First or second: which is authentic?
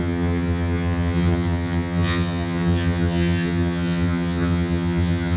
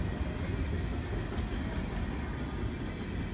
second